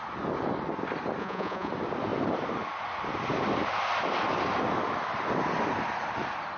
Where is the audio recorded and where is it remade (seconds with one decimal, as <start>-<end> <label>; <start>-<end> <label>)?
0.0-1.2 recorded; 1.2-1.7 remade; 1.7-6.6 recorded

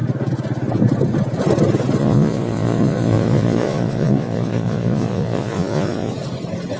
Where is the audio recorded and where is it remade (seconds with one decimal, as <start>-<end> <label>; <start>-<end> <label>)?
0.0-2.0 recorded; 2.0-6.1 remade; 6.1-6.8 recorded

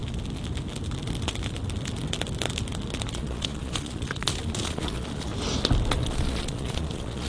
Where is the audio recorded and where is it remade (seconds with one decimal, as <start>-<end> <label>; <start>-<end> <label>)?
0.0-3.1 recorded; 3.1-5.3 remade; 5.3-5.9 recorded; 5.9-7.3 remade

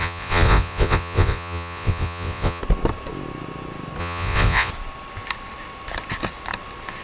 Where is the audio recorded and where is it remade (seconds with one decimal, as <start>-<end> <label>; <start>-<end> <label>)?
0.0-2.6 remade; 2.6-4.0 recorded; 4.0-4.7 remade; 4.7-7.0 recorded